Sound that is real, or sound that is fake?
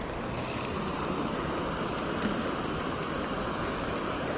real